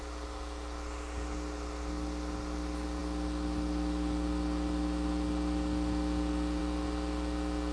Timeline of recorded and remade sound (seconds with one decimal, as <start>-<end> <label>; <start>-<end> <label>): 0.0-7.7 recorded